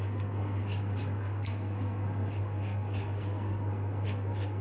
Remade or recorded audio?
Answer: remade